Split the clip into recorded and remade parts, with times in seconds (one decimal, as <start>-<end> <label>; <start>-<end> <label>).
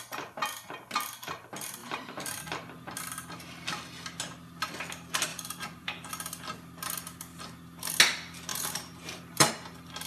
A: 0.0-1.8 recorded; 1.8-2.4 remade; 2.4-5.3 recorded; 5.3-6.1 remade; 6.1-8.5 recorded; 8.5-9.5 remade; 9.5-10.1 recorded